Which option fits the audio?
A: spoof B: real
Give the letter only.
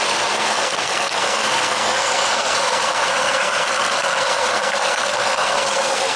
A